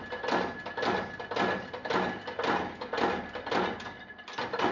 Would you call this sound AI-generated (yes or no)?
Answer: no